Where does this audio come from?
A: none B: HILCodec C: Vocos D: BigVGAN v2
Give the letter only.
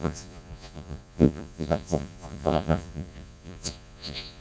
C